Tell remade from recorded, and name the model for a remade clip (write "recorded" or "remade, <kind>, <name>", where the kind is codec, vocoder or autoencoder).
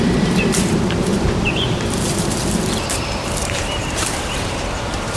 remade, vocoder, BigVGAN v2